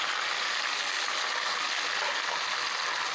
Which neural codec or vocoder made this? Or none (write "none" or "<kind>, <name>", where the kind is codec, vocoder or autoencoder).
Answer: none